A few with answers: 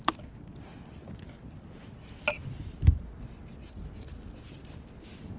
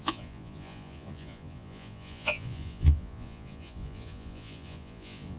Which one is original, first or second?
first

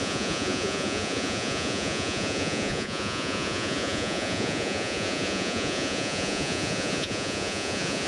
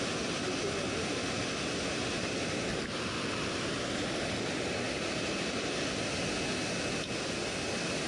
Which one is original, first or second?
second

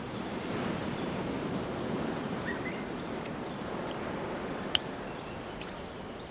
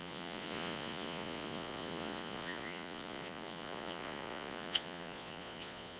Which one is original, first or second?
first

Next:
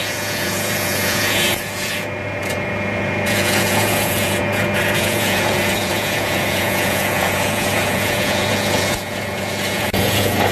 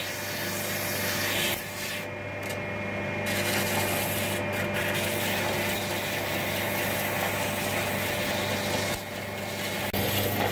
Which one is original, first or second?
second